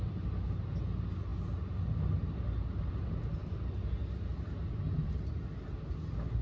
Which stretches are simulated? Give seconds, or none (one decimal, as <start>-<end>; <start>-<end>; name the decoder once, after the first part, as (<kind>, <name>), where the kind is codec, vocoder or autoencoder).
none